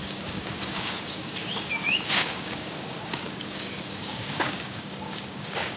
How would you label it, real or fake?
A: fake